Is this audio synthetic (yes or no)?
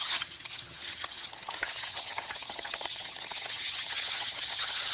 yes